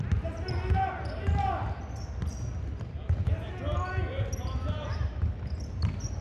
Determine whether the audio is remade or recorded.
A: recorded